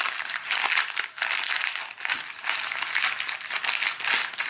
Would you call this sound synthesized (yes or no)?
no